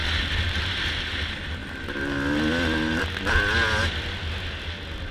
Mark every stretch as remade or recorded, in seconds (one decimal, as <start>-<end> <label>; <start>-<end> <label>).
0.0-5.1 recorded